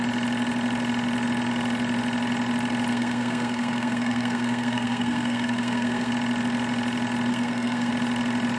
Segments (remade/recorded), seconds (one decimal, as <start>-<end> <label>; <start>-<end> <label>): 0.0-2.9 recorded; 2.9-6.1 remade; 6.1-7.3 recorded; 7.3-7.9 remade; 7.9-8.6 recorded